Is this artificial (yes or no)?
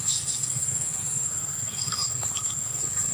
yes